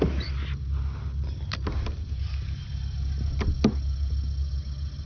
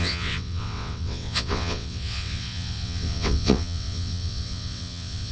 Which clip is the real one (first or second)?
first